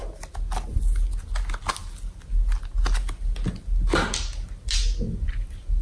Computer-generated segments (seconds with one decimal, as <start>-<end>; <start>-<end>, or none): none